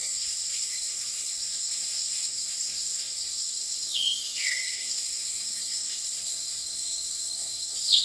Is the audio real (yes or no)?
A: no